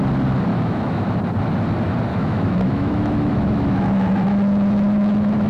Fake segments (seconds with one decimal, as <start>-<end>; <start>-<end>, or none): 0.5-1.1; 2.1-5.5